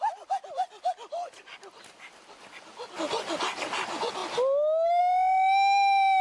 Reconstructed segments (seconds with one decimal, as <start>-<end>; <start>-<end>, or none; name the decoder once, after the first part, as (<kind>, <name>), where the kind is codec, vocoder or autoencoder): none